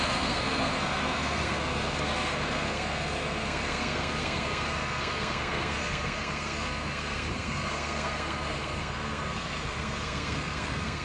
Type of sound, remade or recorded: remade